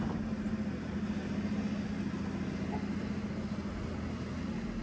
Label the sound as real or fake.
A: real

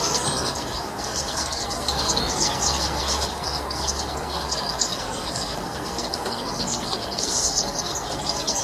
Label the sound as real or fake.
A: fake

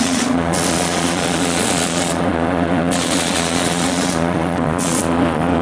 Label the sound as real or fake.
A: fake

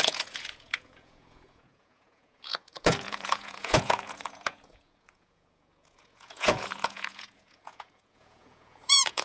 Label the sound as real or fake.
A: fake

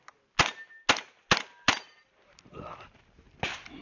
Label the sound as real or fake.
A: real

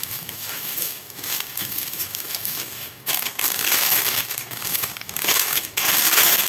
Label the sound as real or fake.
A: fake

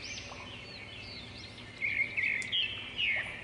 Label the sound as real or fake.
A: real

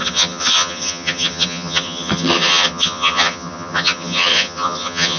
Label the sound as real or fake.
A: fake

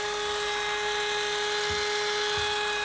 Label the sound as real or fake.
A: real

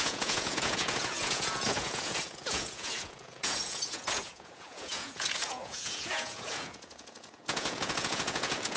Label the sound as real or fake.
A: fake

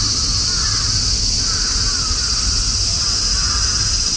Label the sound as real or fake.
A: real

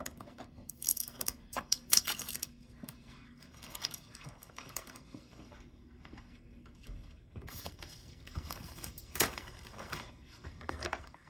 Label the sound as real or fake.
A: fake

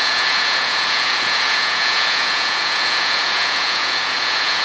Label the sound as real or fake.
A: fake